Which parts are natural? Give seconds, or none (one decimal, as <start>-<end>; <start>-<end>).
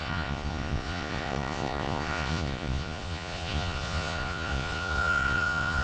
none